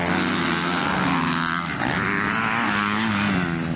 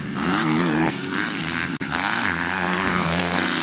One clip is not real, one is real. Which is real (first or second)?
first